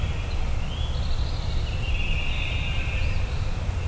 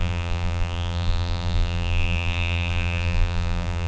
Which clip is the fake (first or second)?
second